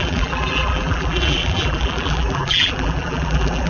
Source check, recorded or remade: remade